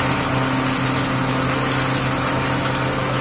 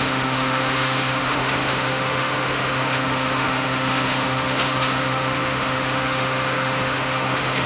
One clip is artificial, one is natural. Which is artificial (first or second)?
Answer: second